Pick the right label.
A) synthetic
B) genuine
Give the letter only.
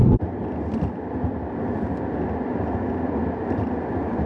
B